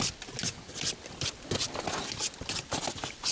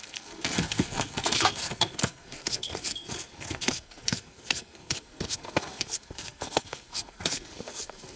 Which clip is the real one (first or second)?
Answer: first